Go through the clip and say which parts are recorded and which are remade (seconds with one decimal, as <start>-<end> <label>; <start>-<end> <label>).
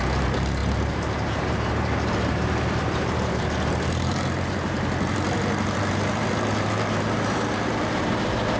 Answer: 0.0-8.6 remade